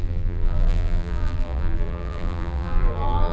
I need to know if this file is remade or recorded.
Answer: remade